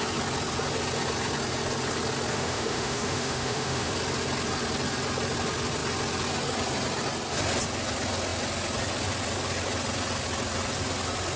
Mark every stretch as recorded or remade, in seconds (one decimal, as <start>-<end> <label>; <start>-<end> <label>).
0.0-2.3 recorded; 2.3-3.9 remade; 3.9-11.4 recorded